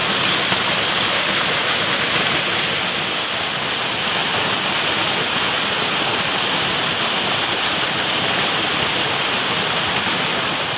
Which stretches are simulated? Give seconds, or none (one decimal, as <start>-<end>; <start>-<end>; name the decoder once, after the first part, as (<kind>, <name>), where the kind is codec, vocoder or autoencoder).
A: none